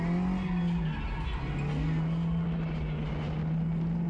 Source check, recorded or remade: recorded